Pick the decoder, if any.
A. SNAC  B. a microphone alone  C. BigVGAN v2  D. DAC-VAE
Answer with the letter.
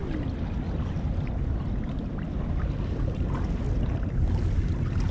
B